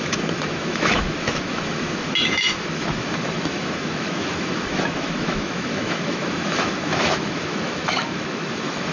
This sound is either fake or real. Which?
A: fake